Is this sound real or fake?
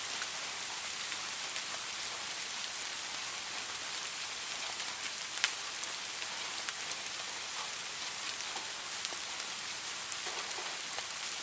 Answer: real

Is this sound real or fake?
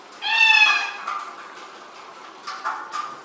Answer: real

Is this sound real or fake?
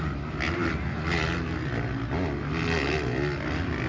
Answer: real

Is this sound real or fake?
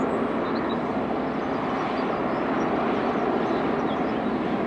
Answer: real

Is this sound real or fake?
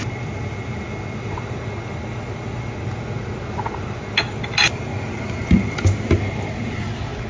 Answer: real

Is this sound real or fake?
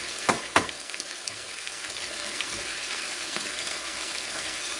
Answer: fake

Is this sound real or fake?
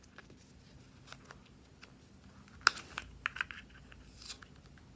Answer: real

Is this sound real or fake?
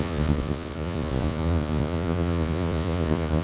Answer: fake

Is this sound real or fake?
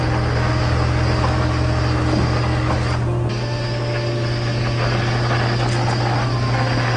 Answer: real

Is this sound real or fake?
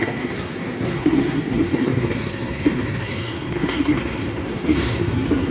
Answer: fake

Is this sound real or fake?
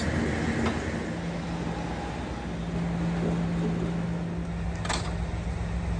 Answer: real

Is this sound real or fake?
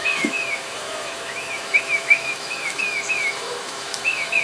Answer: fake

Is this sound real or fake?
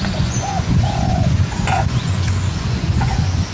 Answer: fake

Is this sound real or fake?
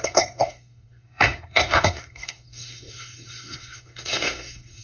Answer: fake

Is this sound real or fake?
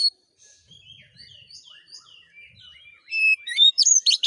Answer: fake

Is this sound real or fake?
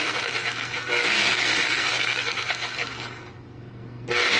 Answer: fake